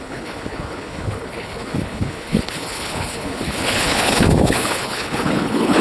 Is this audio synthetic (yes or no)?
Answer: yes